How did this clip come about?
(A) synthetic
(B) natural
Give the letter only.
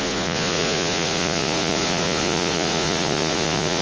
A